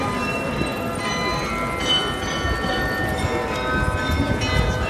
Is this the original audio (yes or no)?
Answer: yes